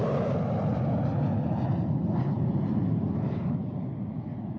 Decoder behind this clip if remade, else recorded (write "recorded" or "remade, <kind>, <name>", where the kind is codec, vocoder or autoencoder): recorded